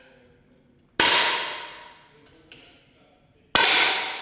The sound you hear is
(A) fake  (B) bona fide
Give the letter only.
B